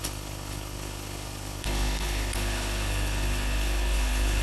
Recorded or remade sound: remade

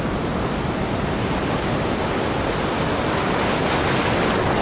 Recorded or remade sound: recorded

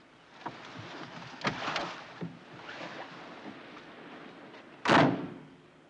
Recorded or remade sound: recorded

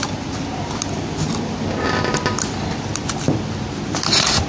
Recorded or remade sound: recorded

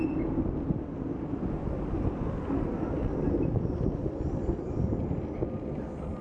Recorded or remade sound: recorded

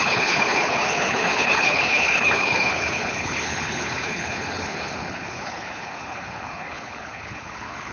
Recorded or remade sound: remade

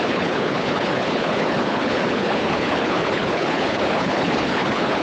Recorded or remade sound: remade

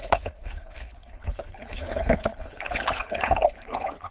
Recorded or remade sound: remade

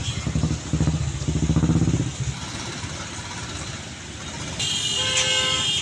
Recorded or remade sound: recorded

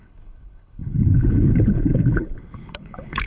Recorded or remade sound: remade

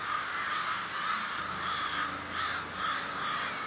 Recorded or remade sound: recorded